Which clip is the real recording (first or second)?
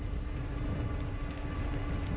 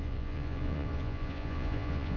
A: first